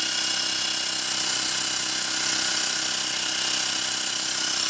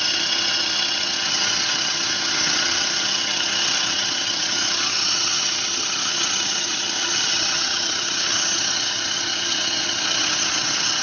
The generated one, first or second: second